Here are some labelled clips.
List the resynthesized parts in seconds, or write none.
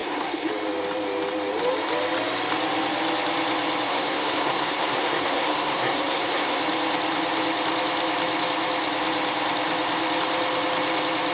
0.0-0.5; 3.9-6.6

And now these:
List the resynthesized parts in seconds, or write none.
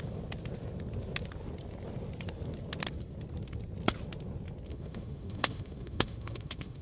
4.7-6.8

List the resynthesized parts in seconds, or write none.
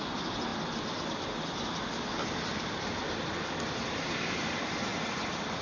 0.0-4.9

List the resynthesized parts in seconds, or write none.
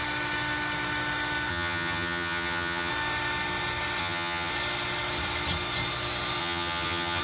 1.5-2.9; 4.0-4.5; 6.4-7.2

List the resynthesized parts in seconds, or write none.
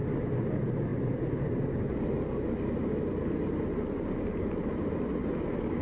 none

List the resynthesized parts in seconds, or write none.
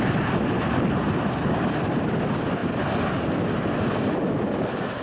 none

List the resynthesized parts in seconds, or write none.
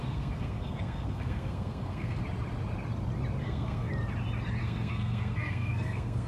0.0-2.2; 3.4-3.9; 4.6-6.3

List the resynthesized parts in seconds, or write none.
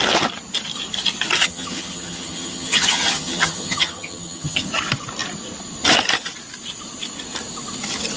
1.4-4.7